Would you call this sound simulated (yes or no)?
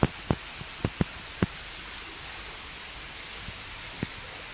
no